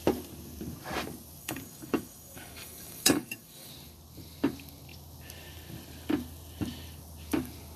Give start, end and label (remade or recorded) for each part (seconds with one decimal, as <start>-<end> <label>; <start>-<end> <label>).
0.0-1.4 recorded; 1.4-3.7 remade; 3.7-7.8 recorded